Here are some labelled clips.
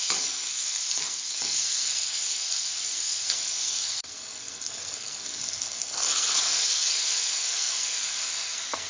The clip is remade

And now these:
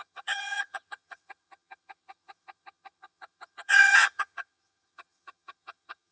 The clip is remade